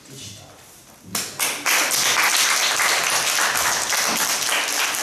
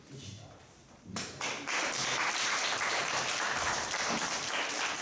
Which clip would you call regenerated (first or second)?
second